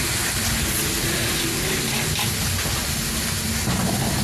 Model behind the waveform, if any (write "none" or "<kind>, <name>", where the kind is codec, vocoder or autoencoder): none